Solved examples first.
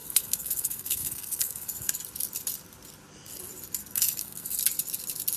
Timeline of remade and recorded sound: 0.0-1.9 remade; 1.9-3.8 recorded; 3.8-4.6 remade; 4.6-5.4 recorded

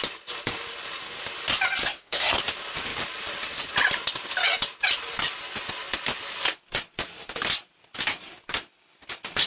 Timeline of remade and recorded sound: 0.0-1.8 recorded; 1.8-2.4 remade; 2.4-9.5 recorded

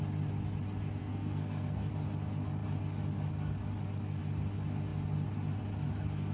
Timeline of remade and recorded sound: 0.0-1.0 recorded; 1.0-1.9 remade; 1.9-6.3 recorded

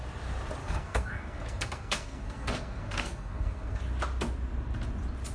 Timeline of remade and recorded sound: 0.0-0.6 recorded; 0.6-3.8 remade; 3.8-5.3 recorded

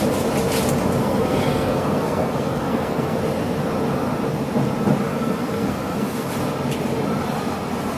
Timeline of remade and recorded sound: 0.0-1.0 recorded; 1.0-3.2 remade; 3.2-5.1 recorded; 5.1-6.3 remade; 6.3-8.0 recorded

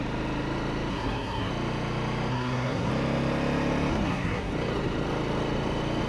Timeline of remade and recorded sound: 0.0-0.9 recorded; 0.9-1.5 remade; 1.5-2.3 recorded; 2.3-2.9 remade; 2.9-3.9 recorded; 3.9-4.5 remade; 4.5-6.1 recorded